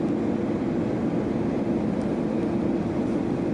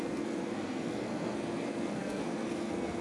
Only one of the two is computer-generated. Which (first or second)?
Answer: second